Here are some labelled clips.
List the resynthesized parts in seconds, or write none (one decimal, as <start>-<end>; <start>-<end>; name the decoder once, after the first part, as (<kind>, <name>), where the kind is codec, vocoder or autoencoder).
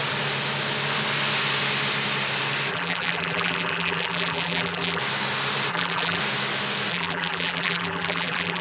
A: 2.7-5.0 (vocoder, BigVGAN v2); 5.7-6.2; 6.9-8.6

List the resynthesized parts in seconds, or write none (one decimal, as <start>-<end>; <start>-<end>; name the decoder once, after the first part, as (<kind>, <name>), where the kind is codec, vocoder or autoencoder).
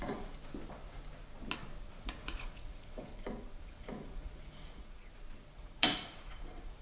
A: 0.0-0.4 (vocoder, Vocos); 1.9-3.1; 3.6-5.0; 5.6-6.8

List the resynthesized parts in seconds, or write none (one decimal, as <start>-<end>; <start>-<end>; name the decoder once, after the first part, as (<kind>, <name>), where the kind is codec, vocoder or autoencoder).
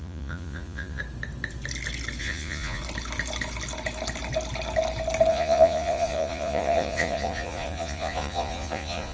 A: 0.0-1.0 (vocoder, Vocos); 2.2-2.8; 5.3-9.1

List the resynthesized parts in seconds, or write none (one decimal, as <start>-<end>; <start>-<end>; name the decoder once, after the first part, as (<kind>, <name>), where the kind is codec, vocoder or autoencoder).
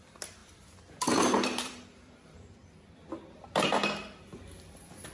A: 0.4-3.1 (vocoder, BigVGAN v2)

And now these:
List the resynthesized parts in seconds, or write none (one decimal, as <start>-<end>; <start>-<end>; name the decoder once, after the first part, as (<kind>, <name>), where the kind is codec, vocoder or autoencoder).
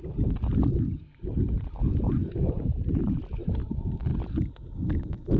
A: none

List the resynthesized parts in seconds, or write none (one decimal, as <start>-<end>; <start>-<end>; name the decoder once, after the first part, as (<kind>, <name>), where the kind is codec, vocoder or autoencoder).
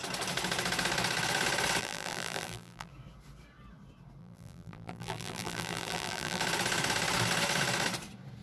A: 1.8-2.9 (vocoder, BigVGAN v2); 4.2-6.4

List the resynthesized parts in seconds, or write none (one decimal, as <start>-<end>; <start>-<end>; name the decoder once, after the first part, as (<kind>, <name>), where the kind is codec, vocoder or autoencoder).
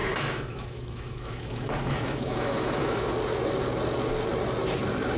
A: 0.0-3.1 (autoencoder, DAC-VAE)